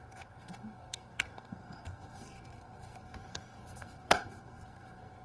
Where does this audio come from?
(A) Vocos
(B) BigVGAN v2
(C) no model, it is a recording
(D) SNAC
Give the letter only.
D